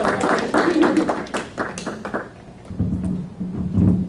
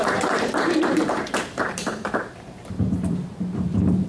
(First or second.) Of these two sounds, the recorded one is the first